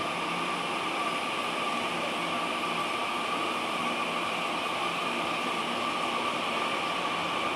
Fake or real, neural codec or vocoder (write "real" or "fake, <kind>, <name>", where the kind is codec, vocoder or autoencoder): real